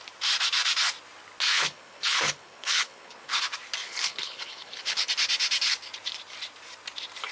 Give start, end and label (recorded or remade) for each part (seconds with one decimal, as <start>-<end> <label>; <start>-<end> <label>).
0.0-1.5 recorded; 1.5-3.4 remade; 3.4-3.8 recorded; 3.8-5.1 remade; 5.1-7.3 recorded